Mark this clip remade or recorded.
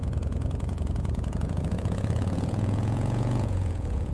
remade